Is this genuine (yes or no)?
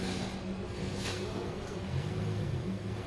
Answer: no